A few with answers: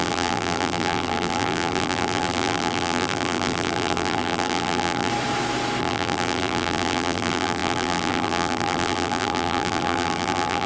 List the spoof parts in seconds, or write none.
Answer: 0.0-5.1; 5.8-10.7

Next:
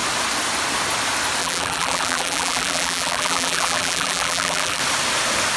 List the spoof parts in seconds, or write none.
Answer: 1.4-4.8

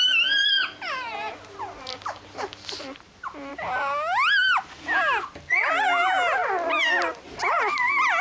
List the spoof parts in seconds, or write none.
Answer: none

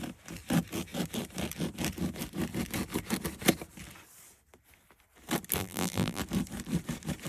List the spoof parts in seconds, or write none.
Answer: 5.6-6.2

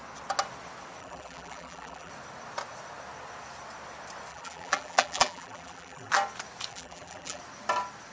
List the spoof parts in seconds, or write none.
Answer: 1.0-2.1; 4.3-6.1; 6.7-7.4

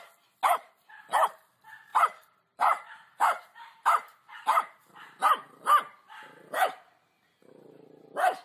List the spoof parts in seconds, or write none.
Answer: 1.9-5.0

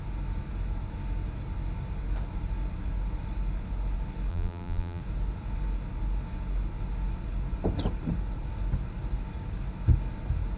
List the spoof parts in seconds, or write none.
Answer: 4.3-5.0

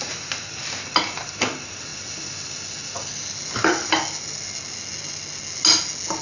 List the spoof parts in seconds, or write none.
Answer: none